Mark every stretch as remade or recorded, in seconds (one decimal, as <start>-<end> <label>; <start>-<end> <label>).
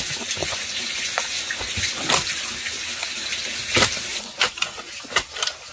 0.0-0.4 recorded; 0.4-2.0 remade; 2.0-4.1 recorded; 4.1-4.9 remade; 4.9-5.7 recorded